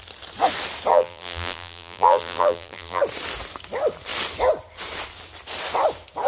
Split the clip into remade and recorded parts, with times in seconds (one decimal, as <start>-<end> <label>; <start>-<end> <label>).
0.0-0.9 recorded; 0.9-3.0 remade; 3.0-6.3 recorded